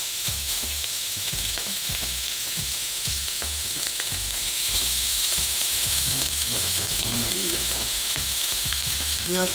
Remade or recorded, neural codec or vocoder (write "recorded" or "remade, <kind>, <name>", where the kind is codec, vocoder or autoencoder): remade, autoencoder, DAC-VAE